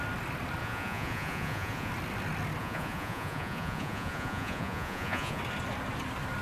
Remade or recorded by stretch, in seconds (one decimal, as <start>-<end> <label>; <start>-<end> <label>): 0.0-0.6 recorded; 0.6-1.9 remade; 1.9-2.6 recorded; 2.6-5.4 remade; 5.4-6.4 recorded